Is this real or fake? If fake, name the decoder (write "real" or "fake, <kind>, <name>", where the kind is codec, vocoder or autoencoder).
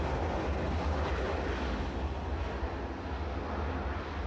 real